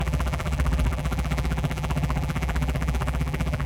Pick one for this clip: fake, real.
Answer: fake